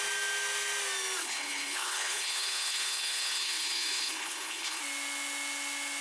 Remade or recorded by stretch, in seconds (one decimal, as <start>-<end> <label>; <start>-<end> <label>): 0.0-1.2 recorded; 1.2-4.8 remade; 4.8-6.0 recorded